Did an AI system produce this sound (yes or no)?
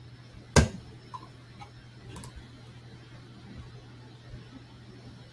no